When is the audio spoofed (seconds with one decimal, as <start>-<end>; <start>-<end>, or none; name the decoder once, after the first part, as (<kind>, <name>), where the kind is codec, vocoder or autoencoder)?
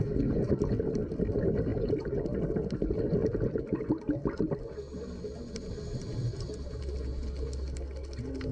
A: none